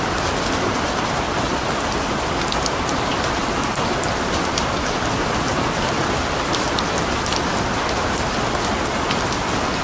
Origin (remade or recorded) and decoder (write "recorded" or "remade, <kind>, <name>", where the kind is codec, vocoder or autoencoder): recorded